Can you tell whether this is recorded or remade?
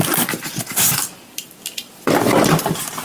remade